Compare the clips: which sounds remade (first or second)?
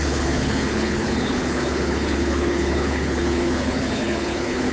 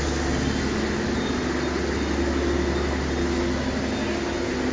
first